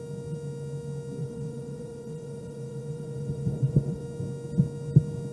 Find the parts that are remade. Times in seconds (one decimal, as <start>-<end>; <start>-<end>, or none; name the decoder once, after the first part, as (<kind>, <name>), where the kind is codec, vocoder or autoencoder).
1.2-4.0 (vocoder, Vocos)